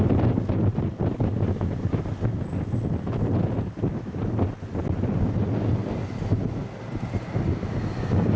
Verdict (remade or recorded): recorded